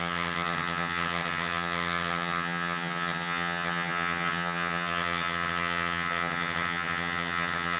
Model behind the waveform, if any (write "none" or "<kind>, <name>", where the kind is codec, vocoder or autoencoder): vocoder, HiFi-GAN